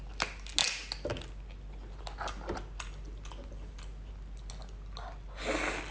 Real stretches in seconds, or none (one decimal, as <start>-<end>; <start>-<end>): 0.0-5.9